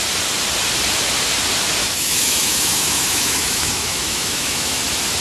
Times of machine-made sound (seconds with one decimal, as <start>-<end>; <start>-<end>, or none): 1.8-4.8